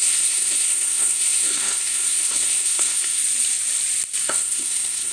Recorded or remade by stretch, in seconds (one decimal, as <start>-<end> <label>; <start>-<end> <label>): 0.0-3.2 remade; 3.2-4.2 recorded; 4.2-5.1 remade